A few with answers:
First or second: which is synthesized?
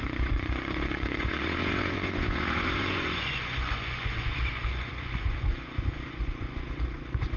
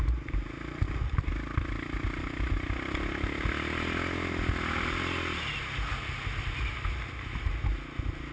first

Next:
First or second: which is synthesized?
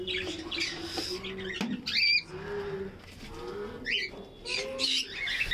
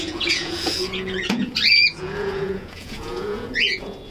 second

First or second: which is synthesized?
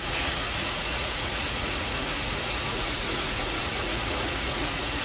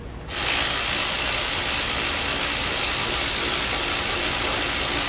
first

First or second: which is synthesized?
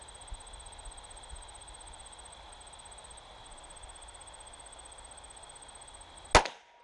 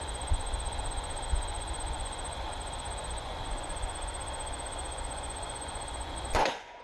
second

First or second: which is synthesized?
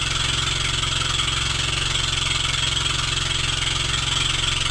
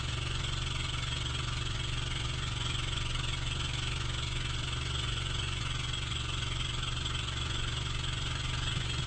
second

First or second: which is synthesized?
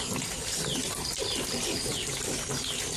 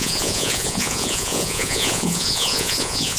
second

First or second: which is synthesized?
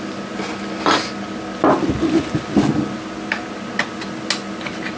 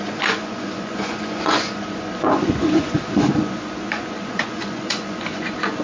second